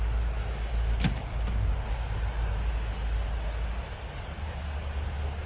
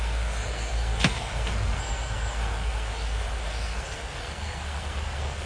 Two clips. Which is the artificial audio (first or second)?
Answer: second